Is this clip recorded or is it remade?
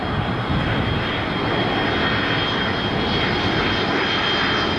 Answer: recorded